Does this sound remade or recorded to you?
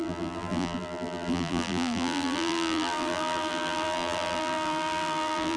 remade